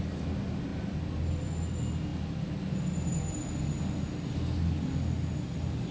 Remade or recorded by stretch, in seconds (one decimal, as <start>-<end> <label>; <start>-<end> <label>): 0.0-5.9 recorded